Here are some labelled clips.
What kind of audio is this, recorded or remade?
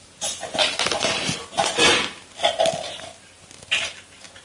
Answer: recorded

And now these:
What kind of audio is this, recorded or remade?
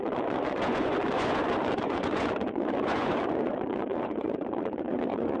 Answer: remade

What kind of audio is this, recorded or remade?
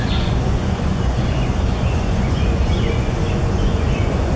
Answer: remade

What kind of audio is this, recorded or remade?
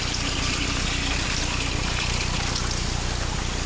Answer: recorded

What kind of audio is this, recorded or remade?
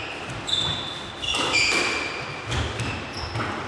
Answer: recorded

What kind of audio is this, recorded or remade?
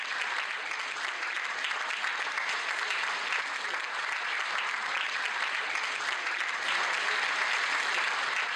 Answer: recorded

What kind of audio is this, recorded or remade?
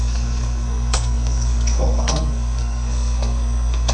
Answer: remade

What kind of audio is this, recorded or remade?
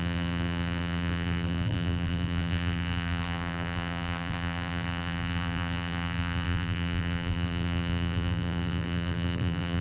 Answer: remade